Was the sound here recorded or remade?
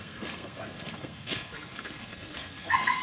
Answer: remade